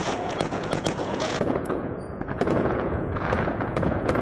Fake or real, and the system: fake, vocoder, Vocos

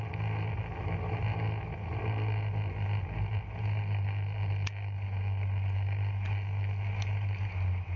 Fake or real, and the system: real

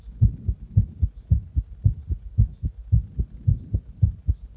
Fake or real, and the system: real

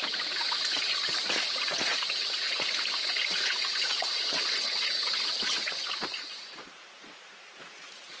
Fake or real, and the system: fake, vocoder, Vocos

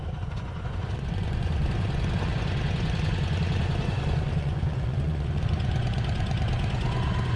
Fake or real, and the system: fake, vocoder, Vocos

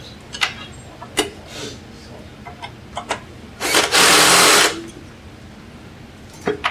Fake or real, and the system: real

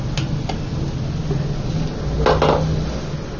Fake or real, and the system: real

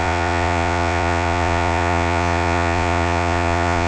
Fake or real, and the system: fake, vocoder, Vocos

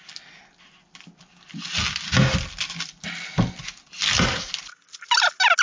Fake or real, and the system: real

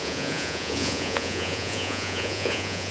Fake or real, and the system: fake, vocoder, Vocos